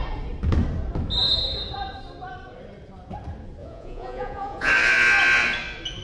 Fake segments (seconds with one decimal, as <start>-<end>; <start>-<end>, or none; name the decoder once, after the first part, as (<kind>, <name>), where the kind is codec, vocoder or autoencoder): 3.6-4.7 (vocoder, Vocos)